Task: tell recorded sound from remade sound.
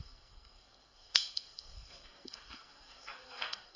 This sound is remade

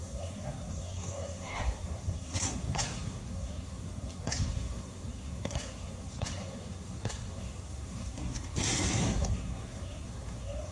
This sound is remade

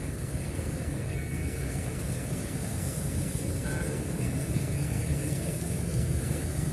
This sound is remade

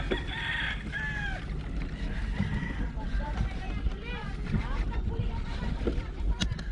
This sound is recorded